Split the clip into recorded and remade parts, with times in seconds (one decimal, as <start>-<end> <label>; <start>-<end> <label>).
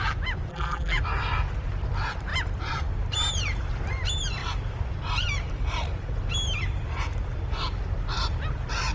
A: 0.0-0.5 recorded; 0.5-1.0 remade; 1.0-8.9 recorded